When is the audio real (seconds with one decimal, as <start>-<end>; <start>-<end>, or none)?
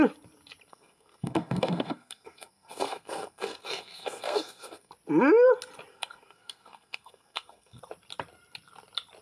0.0-0.7; 4.9-5.9; 7.8-9.2